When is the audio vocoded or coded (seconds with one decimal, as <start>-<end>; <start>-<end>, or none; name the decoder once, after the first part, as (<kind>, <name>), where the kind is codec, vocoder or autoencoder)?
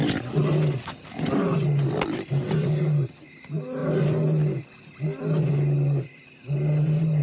none